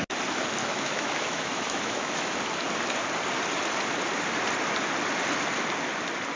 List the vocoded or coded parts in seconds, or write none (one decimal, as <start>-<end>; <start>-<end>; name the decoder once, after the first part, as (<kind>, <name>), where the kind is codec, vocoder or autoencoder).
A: 0.6-2.3 (autoencoder, DAC-VAE)